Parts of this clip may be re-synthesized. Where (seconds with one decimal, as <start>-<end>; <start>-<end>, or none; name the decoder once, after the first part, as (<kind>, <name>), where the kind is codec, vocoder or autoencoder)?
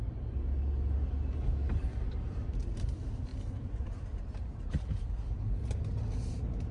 2.7-6.7 (vocoder, BigVGAN v2)